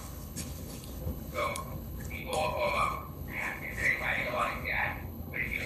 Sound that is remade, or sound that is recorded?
remade